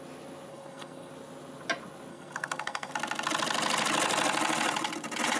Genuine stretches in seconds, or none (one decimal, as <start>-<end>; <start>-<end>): 0.0-0.5; 1.1-2.1; 2.9-5.4